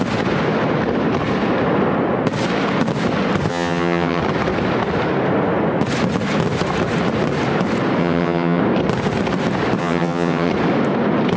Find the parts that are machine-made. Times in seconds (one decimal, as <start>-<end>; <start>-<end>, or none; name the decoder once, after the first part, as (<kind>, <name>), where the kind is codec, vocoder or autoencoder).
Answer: 3.5-4.2 (vocoder, HiFi-GAN); 8.0-8.6; 9.8-10.5